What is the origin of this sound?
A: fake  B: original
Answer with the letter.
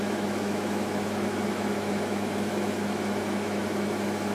A